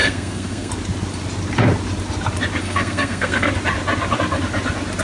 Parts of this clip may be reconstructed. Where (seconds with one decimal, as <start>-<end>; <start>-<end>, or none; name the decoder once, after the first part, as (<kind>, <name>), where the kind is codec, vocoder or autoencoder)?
0.0-0.7 (codec, SNAC); 2.6-3.5